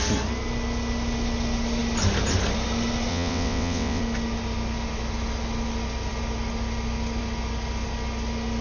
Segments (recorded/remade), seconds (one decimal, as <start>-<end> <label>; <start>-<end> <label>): 0.0-3.1 recorded; 3.1-4.0 remade; 4.0-8.6 recorded